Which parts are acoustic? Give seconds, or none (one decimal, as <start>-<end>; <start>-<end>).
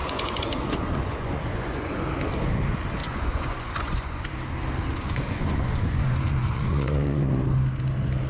2.0-3.0; 4.3-4.9; 7.3-8.3